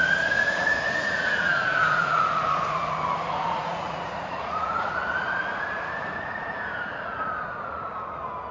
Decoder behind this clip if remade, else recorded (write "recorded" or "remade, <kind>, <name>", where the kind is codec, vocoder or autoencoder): remade, vocoder, Vocos